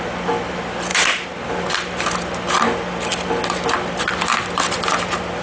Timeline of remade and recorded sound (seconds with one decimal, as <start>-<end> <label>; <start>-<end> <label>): 0.0-5.4 recorded